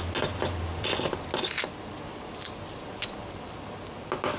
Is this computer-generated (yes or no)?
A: no